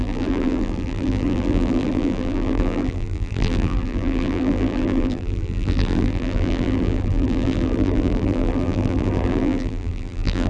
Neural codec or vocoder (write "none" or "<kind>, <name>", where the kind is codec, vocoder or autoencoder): vocoder, BigVGAN v2